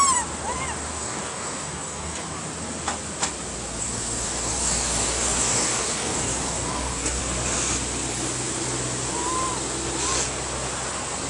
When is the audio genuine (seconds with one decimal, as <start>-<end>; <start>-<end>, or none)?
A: 0.0-0.9; 2.4-3.8; 7.2-11.3

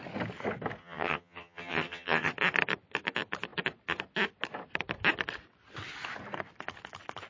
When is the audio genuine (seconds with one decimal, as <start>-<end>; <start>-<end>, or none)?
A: 0.0-0.8; 2.3-7.3

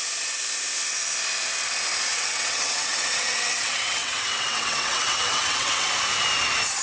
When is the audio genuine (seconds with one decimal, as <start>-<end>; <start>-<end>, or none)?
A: 0.0-2.1; 5.9-6.8

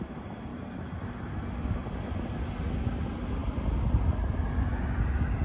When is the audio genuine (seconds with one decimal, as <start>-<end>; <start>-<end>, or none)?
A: 0.0-0.5; 1.1-5.4

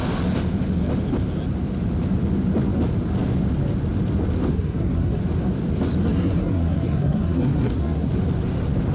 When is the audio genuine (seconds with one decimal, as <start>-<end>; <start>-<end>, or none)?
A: 0.0-4.5; 5.2-6.0; 8.1-8.9

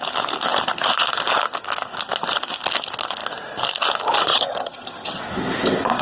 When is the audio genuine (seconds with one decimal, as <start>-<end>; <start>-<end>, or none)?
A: 0.0-4.3; 5.2-6.0

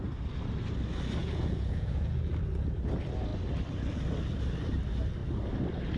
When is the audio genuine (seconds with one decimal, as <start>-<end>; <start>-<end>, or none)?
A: 0.0-1.2; 2.3-6.0